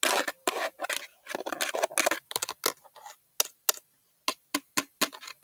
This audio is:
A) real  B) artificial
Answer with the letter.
A